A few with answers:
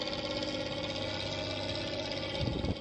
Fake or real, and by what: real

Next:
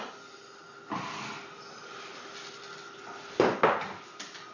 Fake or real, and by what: real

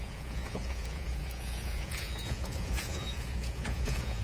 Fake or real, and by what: fake, vocoder, Vocos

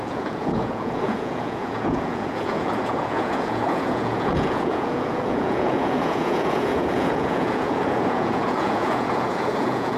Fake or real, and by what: fake, vocoder, Vocos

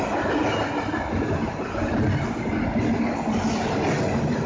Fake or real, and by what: real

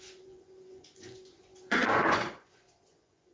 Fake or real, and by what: fake, vocoder, Vocos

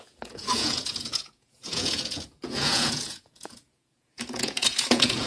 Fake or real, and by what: fake, vocoder, Vocos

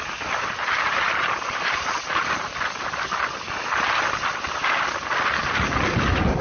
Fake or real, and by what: real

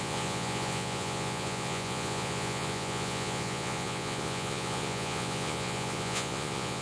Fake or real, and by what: fake, vocoder, Vocos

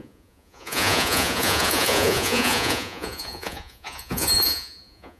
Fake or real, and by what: fake, vocoder, Vocos